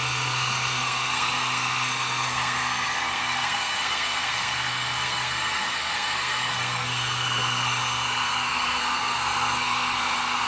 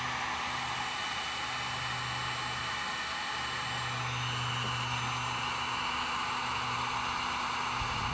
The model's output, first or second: first